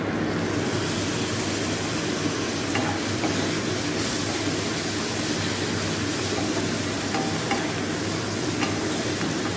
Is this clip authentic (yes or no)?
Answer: yes